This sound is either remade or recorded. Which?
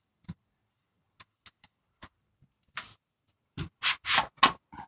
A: recorded